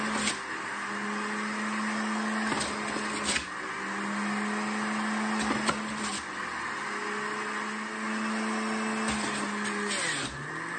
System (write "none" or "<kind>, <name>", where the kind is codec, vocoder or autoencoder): none